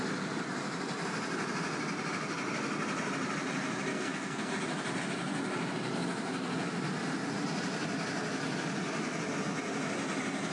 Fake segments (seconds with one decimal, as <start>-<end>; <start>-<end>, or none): 3.9-4.5

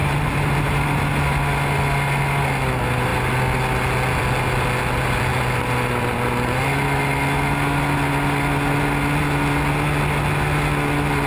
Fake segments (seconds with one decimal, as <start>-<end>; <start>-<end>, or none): 0.0-1.0

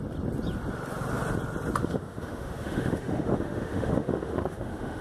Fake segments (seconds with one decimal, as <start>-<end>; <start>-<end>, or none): 1.8-5.0